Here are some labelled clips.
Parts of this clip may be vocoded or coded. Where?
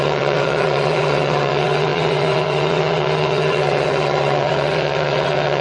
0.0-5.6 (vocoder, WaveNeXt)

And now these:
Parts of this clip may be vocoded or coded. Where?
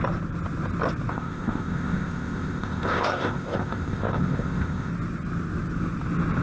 1.1-4.9 (codec, ZipCodec)